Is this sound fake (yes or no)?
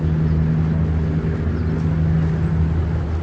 no